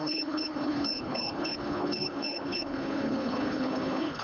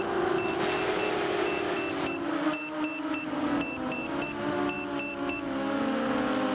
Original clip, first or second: second